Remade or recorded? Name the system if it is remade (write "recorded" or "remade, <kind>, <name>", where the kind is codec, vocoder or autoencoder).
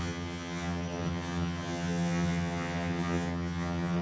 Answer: remade, vocoder, HiFi-GAN